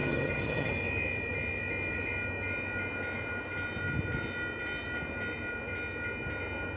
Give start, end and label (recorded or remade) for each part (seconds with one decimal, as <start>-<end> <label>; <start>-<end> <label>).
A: 0.0-0.7 remade; 0.7-6.8 recorded